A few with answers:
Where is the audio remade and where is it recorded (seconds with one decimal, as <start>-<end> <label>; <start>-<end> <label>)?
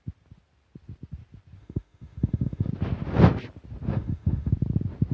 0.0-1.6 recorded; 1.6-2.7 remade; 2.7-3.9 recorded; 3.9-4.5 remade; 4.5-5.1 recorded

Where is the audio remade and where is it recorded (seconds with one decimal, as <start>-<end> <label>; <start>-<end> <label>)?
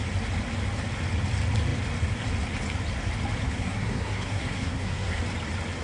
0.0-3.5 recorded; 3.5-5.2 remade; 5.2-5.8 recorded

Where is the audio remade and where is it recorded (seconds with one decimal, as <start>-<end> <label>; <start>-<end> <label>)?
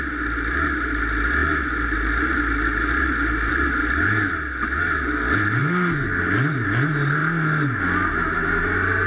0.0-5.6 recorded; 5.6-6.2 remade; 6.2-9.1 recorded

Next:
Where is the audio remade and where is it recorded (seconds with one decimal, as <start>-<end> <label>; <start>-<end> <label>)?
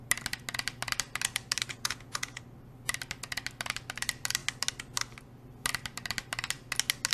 0.0-1.7 recorded; 1.7-2.4 remade; 2.4-7.1 recorded